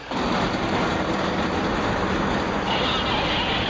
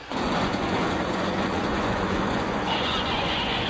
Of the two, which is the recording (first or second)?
first